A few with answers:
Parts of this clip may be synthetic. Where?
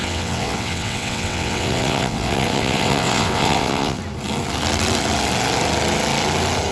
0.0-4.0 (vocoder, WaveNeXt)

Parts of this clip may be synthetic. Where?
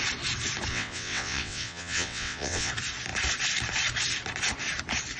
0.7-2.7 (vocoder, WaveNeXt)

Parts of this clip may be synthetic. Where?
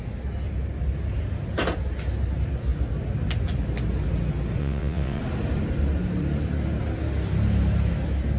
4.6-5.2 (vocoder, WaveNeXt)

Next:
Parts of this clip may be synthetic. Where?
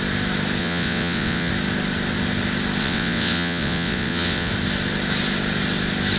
0.6-1.5 (vocoder, WaveNeXt); 2.8-4.5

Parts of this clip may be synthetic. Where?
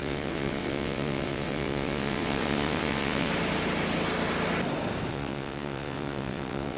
0.0-3.3 (vocoder, WaveNeXt); 5.1-6.8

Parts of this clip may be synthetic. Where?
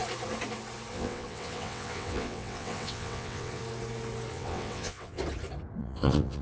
0.9-3.6 (vocoder, WaveNeXt); 4.3-5.2; 5.8-6.4